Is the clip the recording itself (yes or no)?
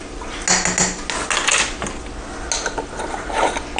yes